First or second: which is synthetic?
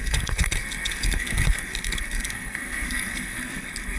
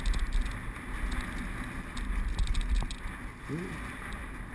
first